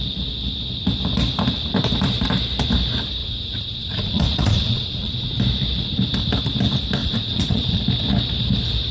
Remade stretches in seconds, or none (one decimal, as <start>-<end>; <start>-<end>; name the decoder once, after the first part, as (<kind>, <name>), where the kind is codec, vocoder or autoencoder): 3.2-5.4 (vocoder, Vocos); 7.0-7.8